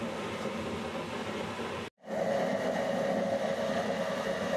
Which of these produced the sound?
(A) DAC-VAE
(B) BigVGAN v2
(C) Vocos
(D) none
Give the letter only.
D